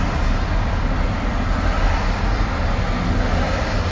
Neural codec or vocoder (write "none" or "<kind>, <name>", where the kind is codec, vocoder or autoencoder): none